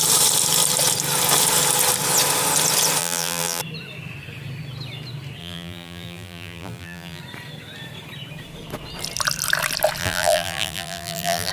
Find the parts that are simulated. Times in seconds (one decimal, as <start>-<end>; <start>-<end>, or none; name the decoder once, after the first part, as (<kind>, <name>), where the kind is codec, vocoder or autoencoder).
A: 3.0-3.6 (vocoder, BigVGAN v2); 5.4-7.2; 10.0-11.5